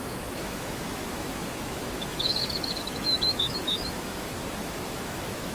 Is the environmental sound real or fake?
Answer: fake